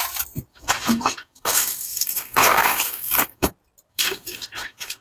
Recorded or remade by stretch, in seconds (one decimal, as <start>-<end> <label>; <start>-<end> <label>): 0.0-0.5 recorded; 0.5-3.5 remade; 3.5-3.9 recorded; 3.9-5.0 remade